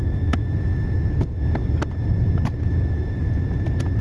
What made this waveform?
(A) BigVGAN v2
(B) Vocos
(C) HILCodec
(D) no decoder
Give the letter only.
D